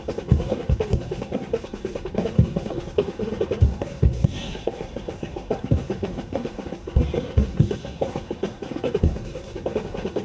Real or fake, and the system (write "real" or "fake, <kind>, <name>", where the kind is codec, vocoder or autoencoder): fake, codec, SNAC